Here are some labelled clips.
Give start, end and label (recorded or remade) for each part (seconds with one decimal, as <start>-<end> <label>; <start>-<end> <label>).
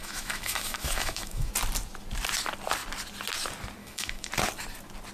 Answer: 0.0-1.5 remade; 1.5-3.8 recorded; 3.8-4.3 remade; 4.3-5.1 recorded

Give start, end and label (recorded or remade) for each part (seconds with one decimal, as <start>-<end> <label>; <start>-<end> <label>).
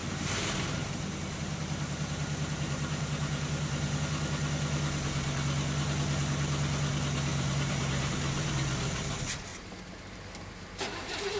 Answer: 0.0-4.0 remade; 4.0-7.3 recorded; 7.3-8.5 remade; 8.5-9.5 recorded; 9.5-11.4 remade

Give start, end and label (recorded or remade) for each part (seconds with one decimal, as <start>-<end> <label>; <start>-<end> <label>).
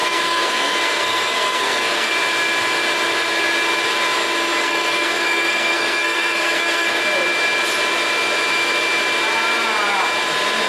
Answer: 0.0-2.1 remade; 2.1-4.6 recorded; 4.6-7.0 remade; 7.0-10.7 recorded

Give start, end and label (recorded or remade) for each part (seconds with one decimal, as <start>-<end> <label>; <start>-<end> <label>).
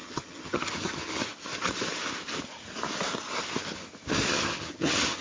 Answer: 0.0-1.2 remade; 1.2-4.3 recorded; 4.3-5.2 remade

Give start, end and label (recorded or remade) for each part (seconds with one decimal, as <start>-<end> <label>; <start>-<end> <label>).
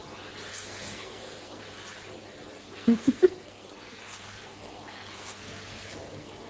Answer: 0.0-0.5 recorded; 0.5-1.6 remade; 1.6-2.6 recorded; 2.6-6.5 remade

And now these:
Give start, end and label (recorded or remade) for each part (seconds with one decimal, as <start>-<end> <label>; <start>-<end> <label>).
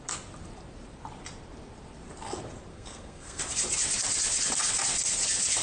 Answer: 0.0-2.7 recorded; 2.7-3.4 remade; 3.4-5.6 recorded